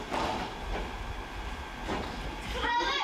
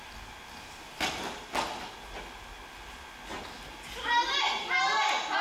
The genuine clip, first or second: second